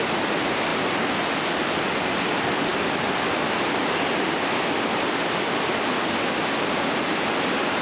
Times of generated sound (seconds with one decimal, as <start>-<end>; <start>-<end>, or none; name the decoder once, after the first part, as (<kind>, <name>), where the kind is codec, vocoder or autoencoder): none